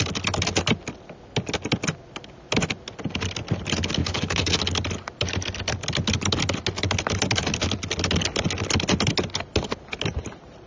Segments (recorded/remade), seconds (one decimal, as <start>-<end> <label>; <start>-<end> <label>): 0.0-4.0 recorded; 4.0-4.6 remade; 4.6-10.7 recorded